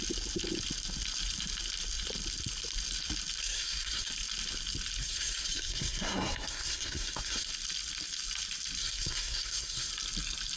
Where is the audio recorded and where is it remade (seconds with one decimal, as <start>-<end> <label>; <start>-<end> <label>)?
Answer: 0.0-3.4 recorded; 3.4-4.1 remade; 4.1-5.0 recorded; 5.0-7.5 remade; 7.5-8.8 recorded; 8.8-9.9 remade; 9.9-10.6 recorded